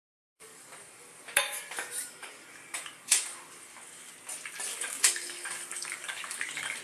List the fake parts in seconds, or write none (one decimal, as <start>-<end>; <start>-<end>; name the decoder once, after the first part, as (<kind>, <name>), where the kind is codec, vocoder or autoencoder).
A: 0.0-4.1 (codec, DAC); 4.7-6.8